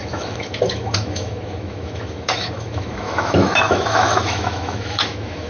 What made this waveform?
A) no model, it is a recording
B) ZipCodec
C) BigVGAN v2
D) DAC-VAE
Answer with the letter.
D